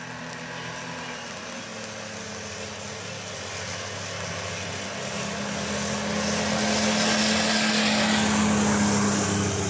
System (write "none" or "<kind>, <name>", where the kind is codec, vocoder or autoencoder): none